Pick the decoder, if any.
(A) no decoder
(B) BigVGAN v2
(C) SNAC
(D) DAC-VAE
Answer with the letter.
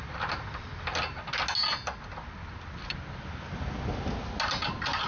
A